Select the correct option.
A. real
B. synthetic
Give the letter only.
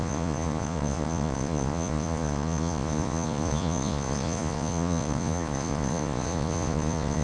B